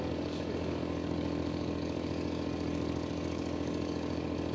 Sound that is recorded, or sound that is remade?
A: remade